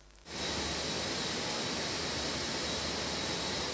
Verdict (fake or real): real